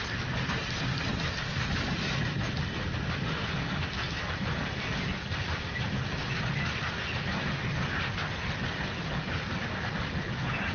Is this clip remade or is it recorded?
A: recorded